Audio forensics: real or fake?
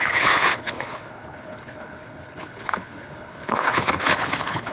fake